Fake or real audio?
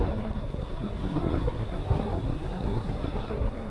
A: fake